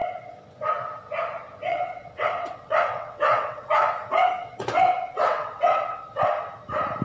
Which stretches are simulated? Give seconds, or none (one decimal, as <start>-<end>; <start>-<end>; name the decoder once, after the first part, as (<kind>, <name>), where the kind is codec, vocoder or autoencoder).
1.7-3.8 (vocoder, WaveNeXt); 4.4-6.3